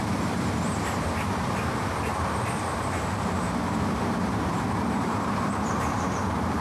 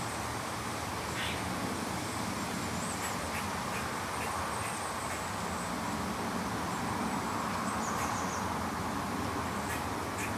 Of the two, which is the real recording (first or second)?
second